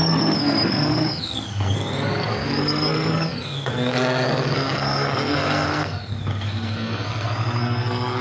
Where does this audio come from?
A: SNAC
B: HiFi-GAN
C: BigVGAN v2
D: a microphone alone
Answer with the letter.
A